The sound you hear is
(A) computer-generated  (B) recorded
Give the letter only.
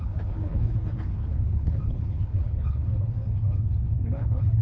A